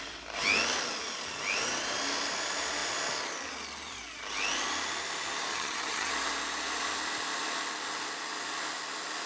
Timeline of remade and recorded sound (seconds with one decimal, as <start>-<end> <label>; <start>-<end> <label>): 0.0-5.5 recorded; 5.5-6.1 remade; 6.1-9.3 recorded